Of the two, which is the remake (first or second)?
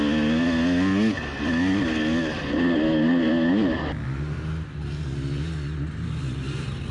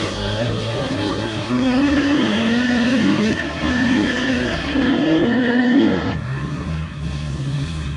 second